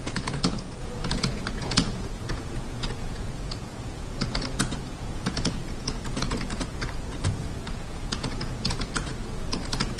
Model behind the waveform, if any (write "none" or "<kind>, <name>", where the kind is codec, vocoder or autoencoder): vocoder, Vocos